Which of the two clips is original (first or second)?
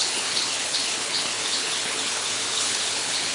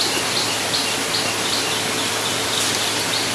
second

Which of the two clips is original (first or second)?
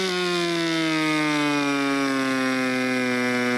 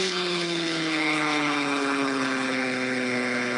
first